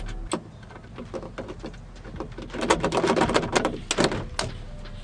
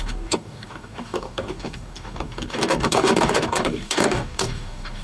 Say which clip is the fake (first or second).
second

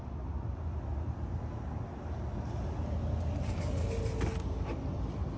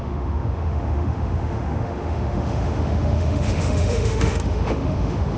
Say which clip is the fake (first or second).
second